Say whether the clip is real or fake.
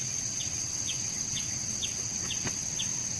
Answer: fake